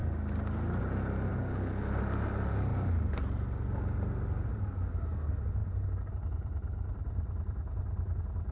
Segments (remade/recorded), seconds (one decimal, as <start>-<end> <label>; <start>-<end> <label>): 0.0-1.3 recorded; 1.3-2.0 remade; 2.0-8.5 recorded